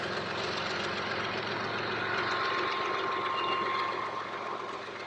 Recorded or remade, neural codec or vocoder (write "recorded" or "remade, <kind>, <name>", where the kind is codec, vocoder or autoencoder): recorded